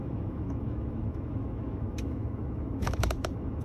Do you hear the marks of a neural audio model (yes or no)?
yes